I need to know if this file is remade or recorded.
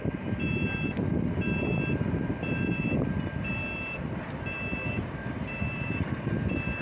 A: remade